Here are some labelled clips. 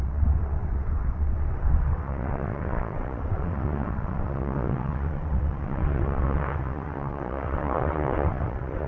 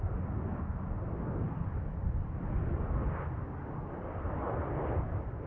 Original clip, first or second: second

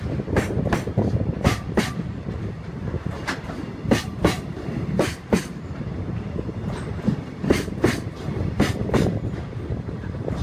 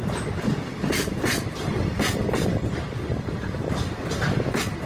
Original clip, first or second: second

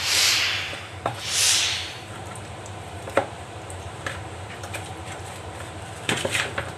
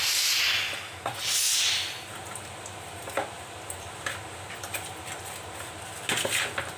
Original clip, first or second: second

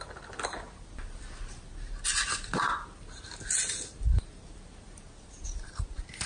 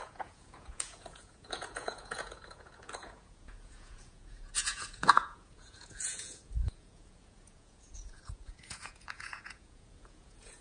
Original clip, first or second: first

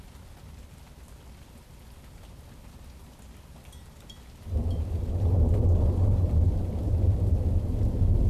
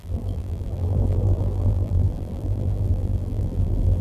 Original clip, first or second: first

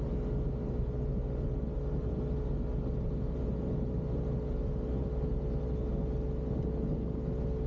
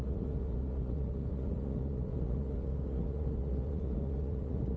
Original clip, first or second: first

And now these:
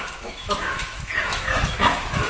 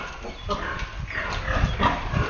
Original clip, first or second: second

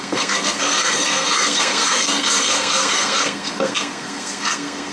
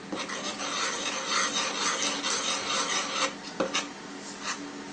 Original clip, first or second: second